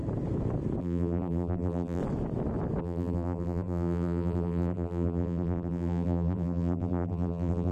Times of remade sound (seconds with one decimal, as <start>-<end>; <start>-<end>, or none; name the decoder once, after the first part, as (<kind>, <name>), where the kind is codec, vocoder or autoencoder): 0.8-2.0 (vocoder, BigVGAN v2); 2.8-7.7